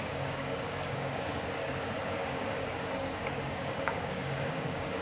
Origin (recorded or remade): remade